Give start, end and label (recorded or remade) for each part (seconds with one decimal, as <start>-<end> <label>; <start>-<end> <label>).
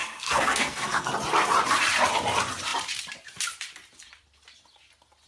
0.0-1.1 remade; 1.1-5.3 recorded